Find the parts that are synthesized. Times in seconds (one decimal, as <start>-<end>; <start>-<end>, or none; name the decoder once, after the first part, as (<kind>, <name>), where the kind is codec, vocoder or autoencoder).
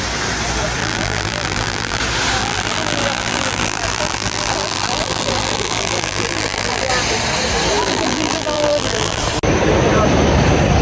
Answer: 0.8-2.0 (vocoder, BigVGAN v2); 2.4-6.9; 7.8-9.2